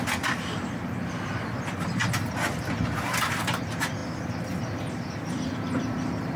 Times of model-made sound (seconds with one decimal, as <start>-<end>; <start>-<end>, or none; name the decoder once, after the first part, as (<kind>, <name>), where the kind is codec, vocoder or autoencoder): 0.0-4.0 (vocoder, BigVGAN v2); 4.8-6.4